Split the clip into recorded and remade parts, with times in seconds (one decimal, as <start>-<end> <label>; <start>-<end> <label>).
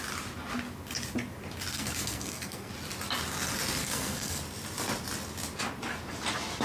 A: 0.0-1.7 recorded; 1.7-2.7 remade; 2.7-3.8 recorded; 3.8-4.4 remade; 4.4-6.6 recorded